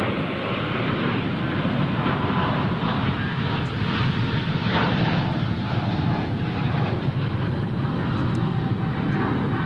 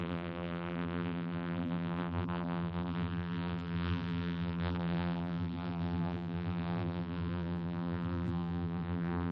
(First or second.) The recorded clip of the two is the first